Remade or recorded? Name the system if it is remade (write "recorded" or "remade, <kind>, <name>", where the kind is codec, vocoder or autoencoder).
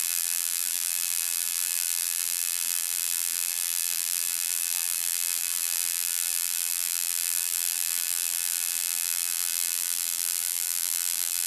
remade, vocoder, BigVGAN v2